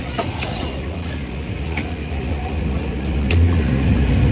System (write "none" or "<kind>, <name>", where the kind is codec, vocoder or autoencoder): vocoder, Vocos